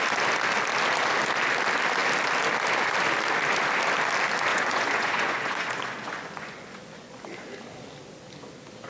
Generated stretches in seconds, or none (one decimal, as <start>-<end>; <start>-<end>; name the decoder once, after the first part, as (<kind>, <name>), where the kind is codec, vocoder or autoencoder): 4.5-7.4 (vocoder, Vocos)